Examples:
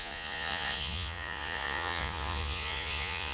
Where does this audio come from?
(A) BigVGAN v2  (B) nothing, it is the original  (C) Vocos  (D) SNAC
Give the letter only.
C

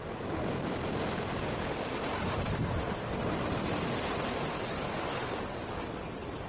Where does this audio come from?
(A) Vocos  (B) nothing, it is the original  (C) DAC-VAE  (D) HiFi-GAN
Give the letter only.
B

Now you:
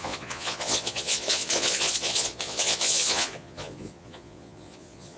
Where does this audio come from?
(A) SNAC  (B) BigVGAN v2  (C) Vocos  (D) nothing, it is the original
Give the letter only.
C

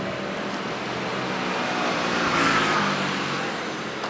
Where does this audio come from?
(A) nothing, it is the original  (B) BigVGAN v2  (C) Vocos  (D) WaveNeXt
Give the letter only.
A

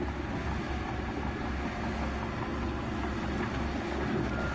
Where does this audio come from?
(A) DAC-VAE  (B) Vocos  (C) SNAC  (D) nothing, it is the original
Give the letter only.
D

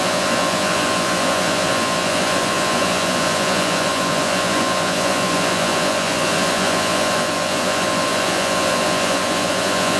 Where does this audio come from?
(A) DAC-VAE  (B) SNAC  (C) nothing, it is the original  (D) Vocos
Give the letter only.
D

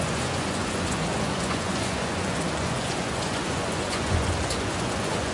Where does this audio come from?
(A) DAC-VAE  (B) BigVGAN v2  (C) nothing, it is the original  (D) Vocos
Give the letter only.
D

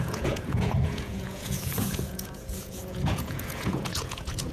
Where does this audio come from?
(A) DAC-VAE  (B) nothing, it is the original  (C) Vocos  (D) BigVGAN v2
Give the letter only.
C